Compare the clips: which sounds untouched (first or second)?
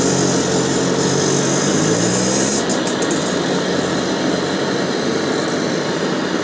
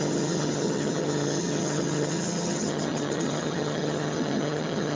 first